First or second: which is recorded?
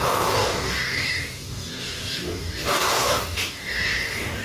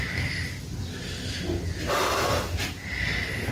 second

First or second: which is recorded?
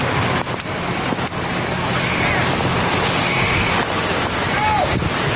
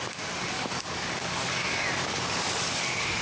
first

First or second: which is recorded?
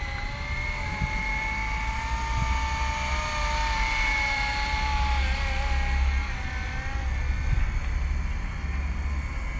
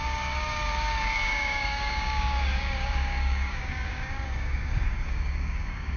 first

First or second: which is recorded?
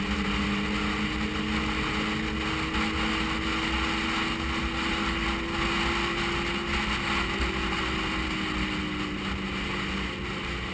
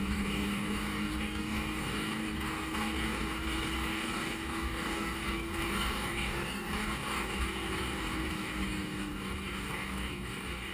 first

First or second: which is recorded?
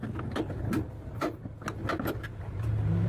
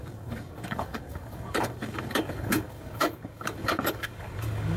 first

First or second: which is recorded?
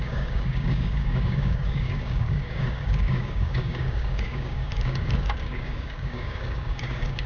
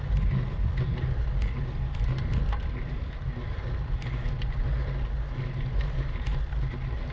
second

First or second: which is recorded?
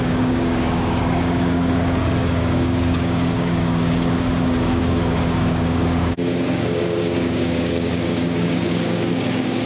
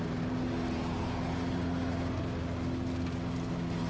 second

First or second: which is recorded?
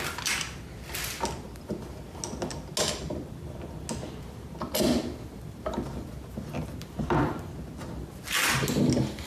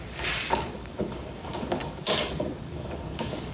first